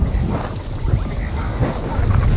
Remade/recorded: recorded